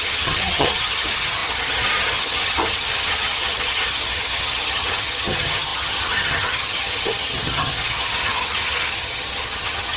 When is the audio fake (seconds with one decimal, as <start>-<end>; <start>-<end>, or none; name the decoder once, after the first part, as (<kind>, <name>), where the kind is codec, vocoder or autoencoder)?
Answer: 0.0-10.0 (vocoder, HiFi-GAN)